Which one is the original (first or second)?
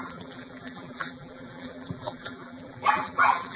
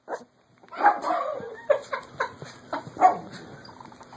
second